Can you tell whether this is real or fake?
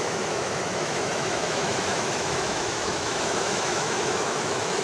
fake